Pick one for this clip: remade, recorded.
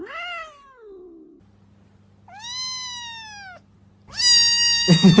recorded